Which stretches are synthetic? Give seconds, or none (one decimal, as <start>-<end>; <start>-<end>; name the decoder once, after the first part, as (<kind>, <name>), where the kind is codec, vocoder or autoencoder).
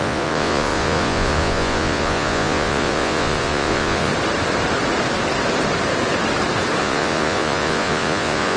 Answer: 0.0-4.1 (vocoder, Vocos); 6.8-8.6